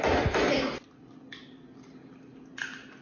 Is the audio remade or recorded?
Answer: recorded